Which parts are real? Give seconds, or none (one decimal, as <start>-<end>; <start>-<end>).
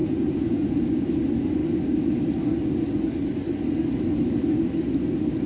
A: 1.1-5.5